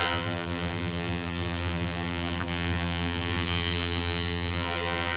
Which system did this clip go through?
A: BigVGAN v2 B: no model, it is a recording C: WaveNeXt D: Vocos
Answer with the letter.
A